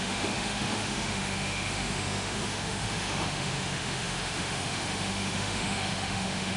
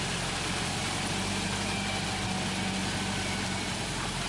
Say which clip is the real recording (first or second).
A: second